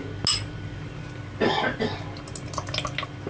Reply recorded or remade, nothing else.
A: recorded